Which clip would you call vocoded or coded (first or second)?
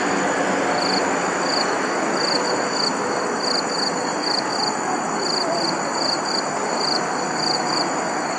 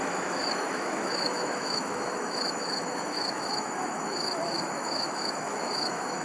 second